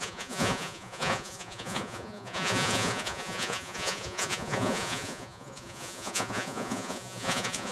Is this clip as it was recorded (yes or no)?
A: no